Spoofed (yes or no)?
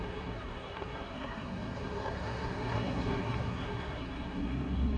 yes